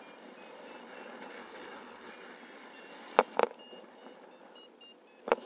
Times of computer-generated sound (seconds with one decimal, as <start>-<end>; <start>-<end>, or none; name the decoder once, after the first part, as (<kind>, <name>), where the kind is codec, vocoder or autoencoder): 1.4-2.1 (codec, HILCodec)